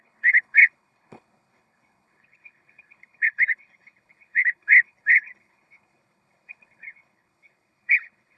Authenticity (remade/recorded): remade